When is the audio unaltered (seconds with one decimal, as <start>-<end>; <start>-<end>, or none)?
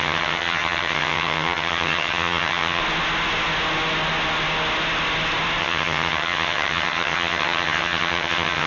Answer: 2.8-5.6